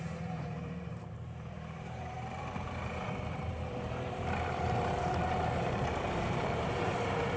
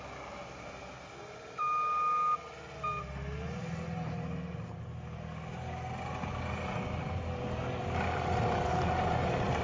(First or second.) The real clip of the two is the second